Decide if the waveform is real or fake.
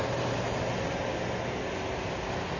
real